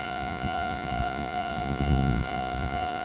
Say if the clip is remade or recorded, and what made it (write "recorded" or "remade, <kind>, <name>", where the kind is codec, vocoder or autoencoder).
remade, vocoder, Vocos